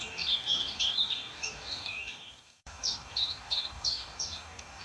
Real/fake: fake